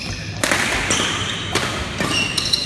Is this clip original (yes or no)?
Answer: yes